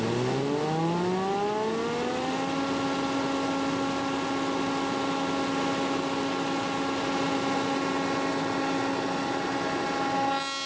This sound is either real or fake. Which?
real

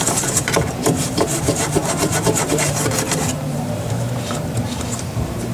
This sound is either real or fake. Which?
fake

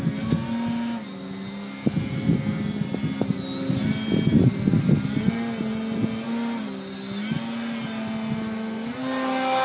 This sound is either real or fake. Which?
real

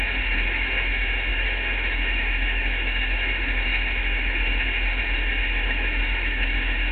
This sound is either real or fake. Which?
fake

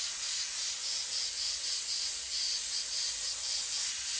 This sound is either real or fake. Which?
real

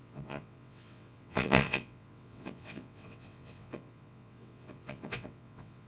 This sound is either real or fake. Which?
fake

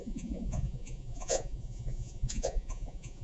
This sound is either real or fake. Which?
fake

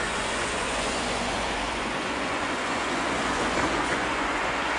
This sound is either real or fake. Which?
fake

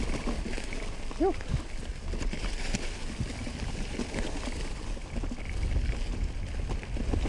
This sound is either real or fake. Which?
real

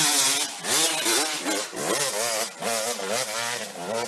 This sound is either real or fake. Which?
real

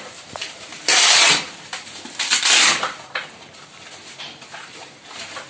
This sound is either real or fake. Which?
real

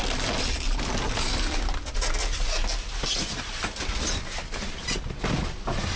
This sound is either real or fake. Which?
real